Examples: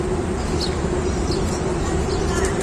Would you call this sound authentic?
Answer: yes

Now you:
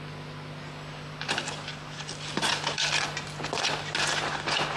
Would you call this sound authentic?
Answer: yes